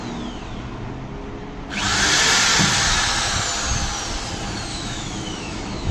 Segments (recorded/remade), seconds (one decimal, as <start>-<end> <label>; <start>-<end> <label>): 0.0-4.7 recorded; 4.7-5.9 remade